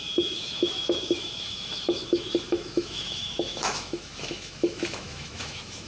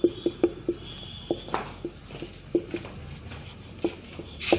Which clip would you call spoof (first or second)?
first